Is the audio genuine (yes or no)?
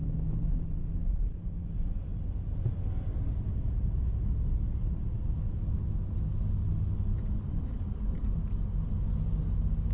yes